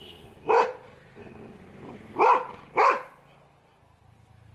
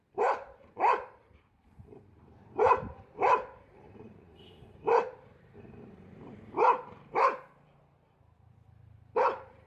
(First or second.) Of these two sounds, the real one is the first